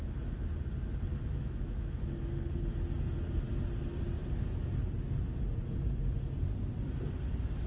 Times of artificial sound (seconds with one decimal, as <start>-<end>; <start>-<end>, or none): 1.1-2.1